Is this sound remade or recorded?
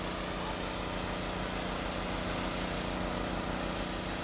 recorded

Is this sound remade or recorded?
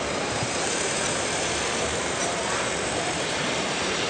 remade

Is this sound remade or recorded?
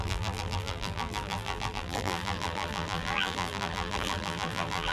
remade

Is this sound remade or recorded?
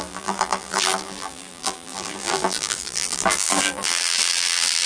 remade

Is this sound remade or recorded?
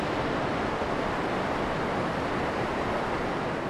recorded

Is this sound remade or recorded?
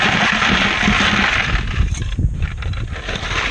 recorded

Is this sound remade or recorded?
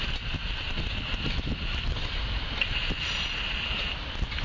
remade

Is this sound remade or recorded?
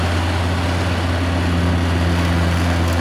recorded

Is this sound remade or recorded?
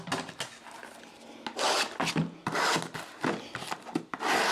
recorded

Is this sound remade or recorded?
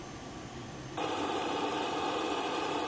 remade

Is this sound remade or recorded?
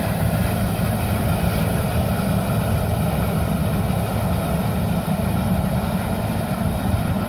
recorded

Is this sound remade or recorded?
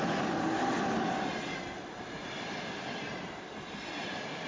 recorded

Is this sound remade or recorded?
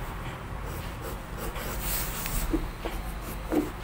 recorded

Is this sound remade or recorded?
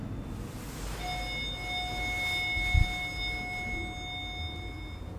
recorded